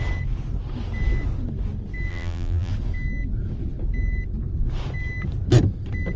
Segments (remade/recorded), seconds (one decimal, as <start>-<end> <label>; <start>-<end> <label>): 0.0-2.1 recorded; 2.1-2.7 remade; 2.7-6.2 recorded